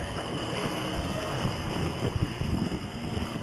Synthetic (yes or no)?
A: yes